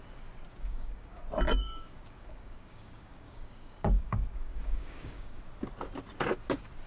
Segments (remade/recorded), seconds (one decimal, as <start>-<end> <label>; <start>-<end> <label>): 0.0-0.5 recorded; 0.5-1.2 remade; 1.2-1.6 recorded; 1.6-5.4 remade; 5.4-6.9 recorded